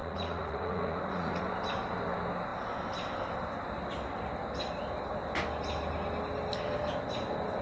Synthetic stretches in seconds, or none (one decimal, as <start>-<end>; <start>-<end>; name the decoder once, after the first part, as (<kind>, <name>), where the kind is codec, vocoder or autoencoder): 0.0-1.4 (vocoder, Vocos)